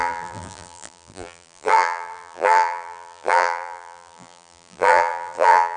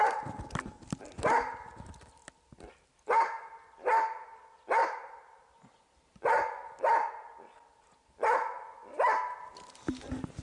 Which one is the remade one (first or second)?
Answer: first